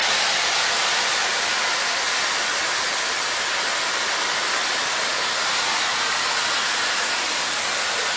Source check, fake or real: real